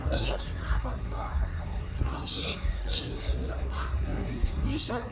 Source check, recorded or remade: remade